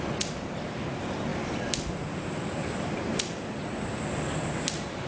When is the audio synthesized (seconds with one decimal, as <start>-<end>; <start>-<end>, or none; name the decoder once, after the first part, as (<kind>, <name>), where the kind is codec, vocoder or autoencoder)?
none